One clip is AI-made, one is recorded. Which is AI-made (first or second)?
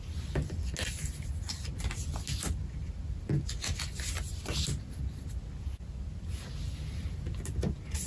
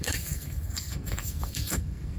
second